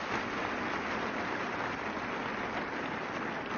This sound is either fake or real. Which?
real